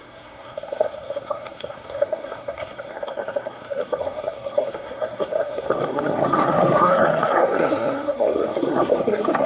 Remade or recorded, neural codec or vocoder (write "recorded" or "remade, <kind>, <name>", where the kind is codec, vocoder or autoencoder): remade, codec, SNAC